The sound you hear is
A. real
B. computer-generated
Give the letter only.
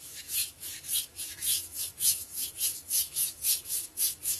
B